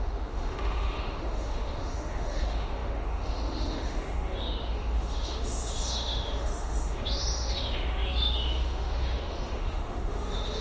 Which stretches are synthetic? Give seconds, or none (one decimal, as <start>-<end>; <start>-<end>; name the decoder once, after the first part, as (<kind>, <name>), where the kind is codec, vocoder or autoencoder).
0.0-10.6 (autoencoder, DAC-VAE)